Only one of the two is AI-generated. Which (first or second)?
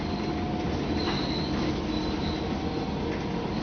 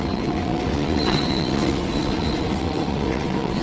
second